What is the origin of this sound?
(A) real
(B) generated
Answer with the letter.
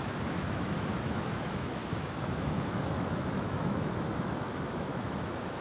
B